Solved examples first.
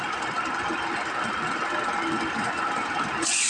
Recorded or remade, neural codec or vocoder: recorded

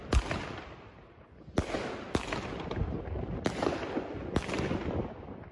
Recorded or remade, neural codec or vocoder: recorded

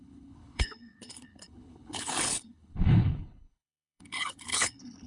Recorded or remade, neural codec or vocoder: remade, codec, HILCodec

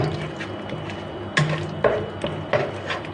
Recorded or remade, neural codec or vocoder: recorded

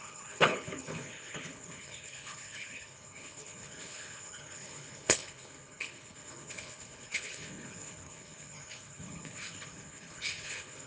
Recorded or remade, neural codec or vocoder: remade, codec, HILCodec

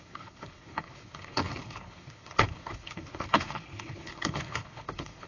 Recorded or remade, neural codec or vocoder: remade, codec, HILCodec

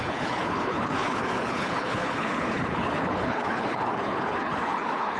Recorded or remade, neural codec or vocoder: remade, codec, HILCodec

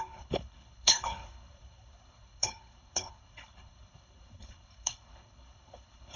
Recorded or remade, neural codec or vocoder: remade, codec, HILCodec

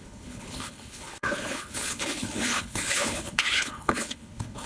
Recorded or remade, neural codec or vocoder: remade, codec, HILCodec